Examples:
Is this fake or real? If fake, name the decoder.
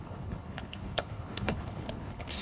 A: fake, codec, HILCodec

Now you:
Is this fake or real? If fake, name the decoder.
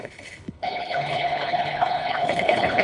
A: fake, codec, HILCodec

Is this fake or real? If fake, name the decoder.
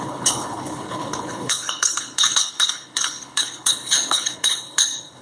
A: fake, codec, HILCodec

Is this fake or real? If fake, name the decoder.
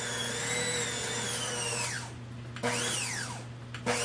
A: real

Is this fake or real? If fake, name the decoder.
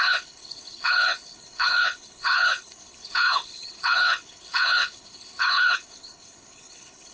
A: fake, codec, HILCodec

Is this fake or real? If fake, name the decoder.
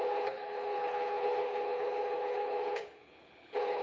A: fake, codec, HILCodec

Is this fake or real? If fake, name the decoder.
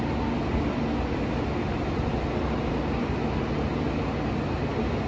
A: real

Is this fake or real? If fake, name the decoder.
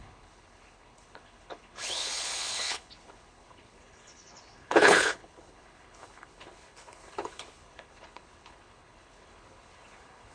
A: fake, codec, HILCodec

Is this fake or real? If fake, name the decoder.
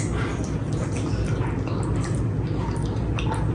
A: real